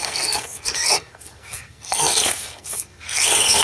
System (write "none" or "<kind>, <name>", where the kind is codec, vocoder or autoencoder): codec, SNAC